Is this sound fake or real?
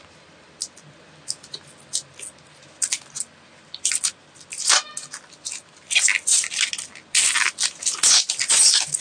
real